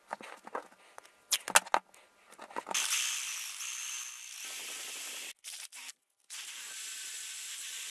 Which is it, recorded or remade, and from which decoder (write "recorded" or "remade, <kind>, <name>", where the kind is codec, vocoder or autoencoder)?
recorded